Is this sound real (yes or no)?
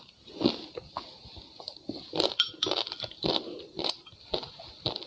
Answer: yes